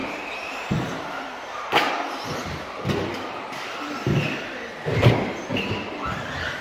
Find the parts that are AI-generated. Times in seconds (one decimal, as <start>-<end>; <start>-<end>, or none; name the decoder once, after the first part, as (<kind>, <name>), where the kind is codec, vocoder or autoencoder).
0.0-1.9 (vocoder, BigVGAN v2)